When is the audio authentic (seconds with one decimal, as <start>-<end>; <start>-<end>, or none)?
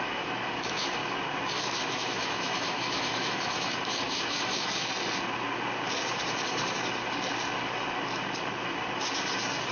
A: 1.0-1.6; 4.9-9.7